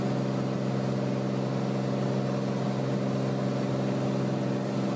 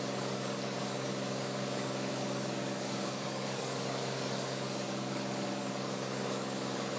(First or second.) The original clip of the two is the first